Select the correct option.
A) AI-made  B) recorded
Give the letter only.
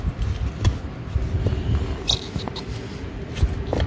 B